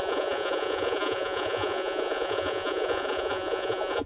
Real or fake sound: fake